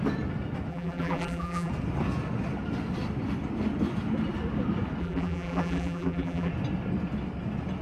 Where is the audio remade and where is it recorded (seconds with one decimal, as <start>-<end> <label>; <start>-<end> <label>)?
0.0-0.7 recorded; 0.7-1.7 remade; 1.7-5.0 recorded; 5.0-6.5 remade; 6.5-7.8 recorded